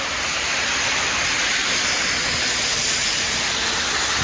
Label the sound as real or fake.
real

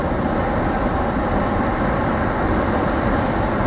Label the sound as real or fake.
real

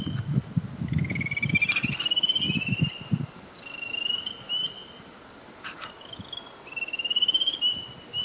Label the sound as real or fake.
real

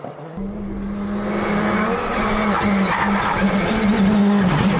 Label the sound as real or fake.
real